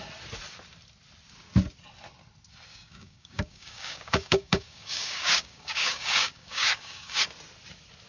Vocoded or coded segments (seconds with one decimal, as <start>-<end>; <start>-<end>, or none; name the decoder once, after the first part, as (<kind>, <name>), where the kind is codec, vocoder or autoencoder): 2.7-7.2 (codec, DAC)